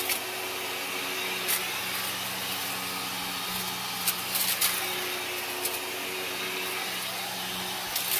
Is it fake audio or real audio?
real